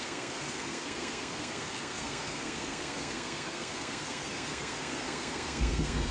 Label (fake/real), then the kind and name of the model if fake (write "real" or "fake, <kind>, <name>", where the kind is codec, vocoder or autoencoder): fake, codec, SNAC